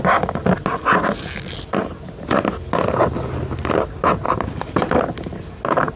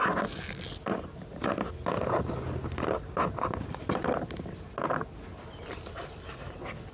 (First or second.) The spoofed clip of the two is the second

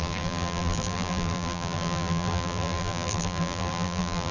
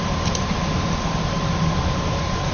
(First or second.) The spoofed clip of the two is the first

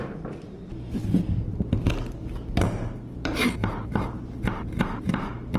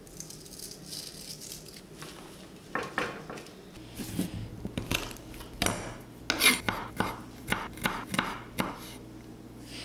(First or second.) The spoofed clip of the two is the first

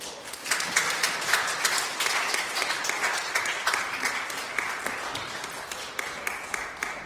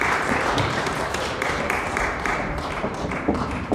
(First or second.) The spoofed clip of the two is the second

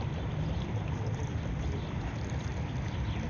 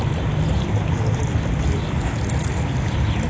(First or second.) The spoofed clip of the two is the first